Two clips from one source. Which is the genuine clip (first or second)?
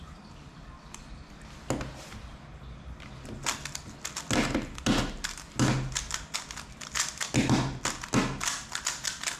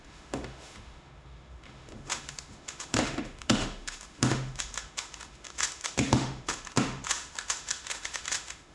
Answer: first